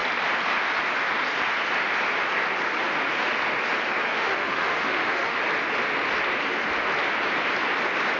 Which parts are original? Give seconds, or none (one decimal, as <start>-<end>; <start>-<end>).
0.0-4.1; 5.4-8.2